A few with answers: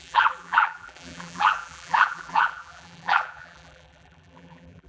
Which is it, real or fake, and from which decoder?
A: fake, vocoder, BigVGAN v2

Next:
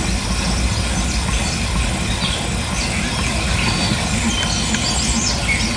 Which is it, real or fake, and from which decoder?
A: real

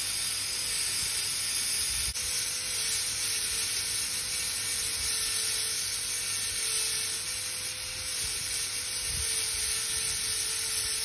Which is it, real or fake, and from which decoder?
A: real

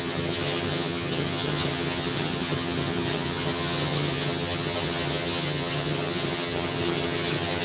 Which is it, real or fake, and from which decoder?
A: fake, vocoder, HiFi-GAN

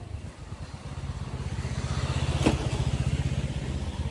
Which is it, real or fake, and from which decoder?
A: real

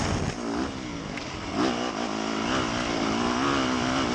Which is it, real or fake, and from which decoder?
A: real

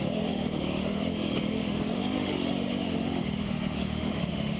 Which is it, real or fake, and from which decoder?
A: fake, autoencoder, DAC-VAE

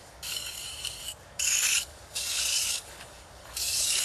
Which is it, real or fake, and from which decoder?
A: fake, codec, DAC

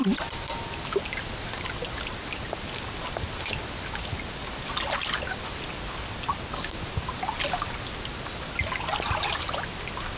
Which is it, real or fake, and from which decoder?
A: real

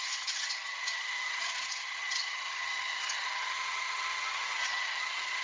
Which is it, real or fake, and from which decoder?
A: fake, vocoder, HiFi-GAN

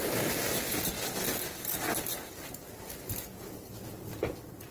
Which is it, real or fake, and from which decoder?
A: real